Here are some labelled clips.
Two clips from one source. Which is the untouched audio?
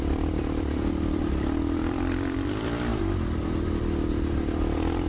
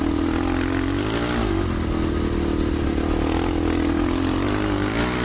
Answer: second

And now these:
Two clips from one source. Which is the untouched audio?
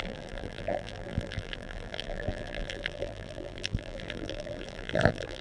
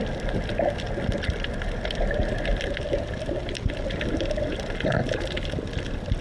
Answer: second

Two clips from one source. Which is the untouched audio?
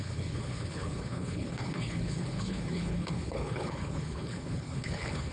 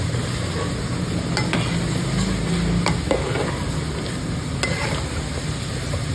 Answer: second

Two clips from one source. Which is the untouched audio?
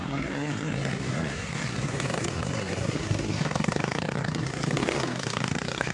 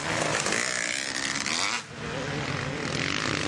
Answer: second